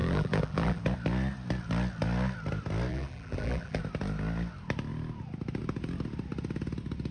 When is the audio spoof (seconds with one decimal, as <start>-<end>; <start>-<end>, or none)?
0.0-0.8; 2.9-3.8